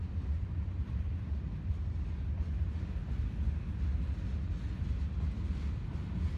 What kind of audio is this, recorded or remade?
recorded